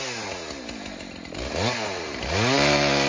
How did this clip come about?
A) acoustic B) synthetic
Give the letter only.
A